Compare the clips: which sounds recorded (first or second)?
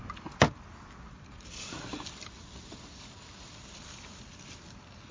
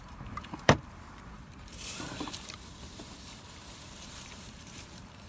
first